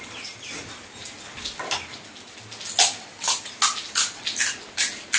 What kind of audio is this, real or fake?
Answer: real